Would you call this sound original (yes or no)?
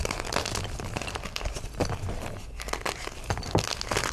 yes